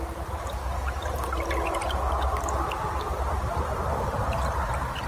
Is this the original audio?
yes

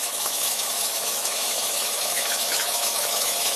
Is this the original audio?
no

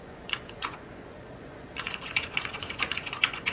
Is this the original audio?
no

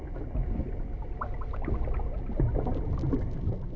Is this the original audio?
yes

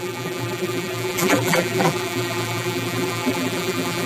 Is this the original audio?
no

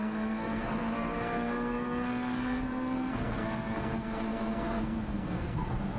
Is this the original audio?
no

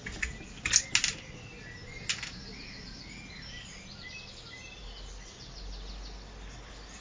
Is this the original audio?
yes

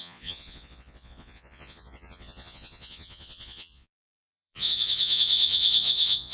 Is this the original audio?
no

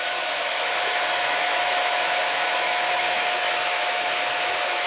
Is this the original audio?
no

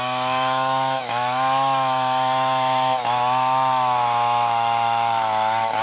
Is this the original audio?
no